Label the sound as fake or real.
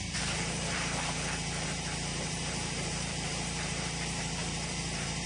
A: fake